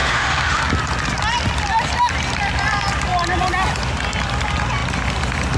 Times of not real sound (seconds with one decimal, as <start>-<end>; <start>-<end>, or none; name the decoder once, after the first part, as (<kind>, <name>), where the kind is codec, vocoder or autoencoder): 0.0-0.6 (autoencoder, DAC-VAE)